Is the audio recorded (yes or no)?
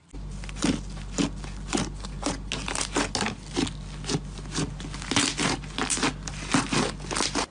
yes